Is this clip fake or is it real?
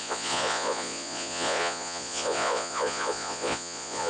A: fake